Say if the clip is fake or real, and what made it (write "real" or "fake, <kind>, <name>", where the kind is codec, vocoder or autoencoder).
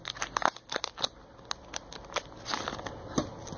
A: real